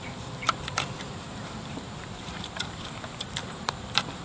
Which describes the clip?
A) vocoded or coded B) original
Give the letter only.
A